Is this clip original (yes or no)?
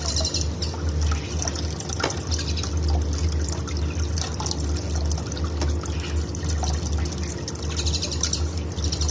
yes